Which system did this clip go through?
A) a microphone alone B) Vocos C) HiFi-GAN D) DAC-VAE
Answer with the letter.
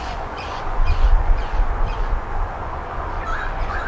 B